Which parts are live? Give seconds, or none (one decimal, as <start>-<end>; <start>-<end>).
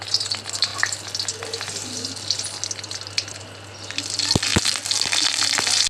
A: 0.0-5.9